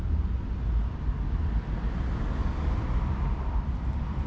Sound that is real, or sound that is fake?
real